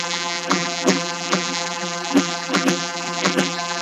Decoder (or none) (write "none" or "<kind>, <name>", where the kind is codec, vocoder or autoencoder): vocoder, BigVGAN v2